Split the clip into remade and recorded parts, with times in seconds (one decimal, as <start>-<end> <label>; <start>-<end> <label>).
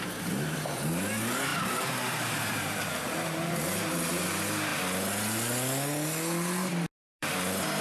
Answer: 0.0-4.7 remade; 4.7-7.2 recorded; 7.2-7.8 remade